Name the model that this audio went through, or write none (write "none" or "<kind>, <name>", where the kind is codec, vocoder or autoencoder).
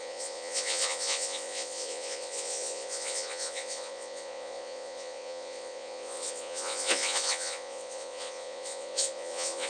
vocoder, Vocos